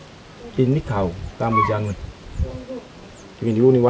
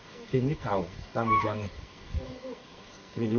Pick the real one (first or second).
first